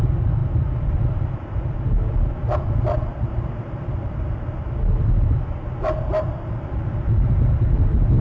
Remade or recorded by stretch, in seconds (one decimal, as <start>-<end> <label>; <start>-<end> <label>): 0.0-8.2 remade